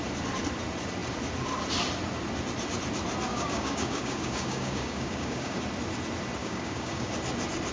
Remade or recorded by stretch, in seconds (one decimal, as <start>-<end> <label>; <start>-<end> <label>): 0.0-3.3 recorded; 3.3-5.6 remade; 5.6-6.4 recorded; 6.4-7.1 remade; 7.1-7.7 recorded